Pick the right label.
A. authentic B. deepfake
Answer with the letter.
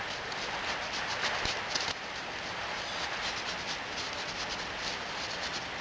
A